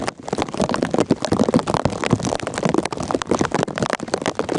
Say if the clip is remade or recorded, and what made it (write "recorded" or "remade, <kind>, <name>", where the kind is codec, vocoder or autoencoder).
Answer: recorded